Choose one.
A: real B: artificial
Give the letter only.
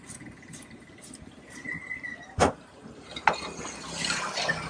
A